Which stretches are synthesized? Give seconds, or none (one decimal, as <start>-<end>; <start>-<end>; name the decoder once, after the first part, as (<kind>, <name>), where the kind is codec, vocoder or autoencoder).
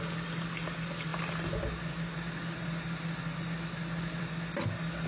none